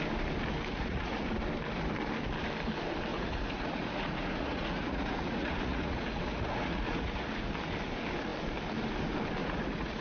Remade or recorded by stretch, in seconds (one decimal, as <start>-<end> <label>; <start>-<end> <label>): 0.0-0.7 recorded; 0.7-1.4 remade; 1.4-3.1 recorded; 3.1-7.5 remade; 7.5-9.4 recorded; 9.4-10.0 remade